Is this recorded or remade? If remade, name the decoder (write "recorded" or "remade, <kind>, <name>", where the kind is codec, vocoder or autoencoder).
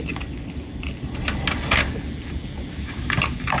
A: recorded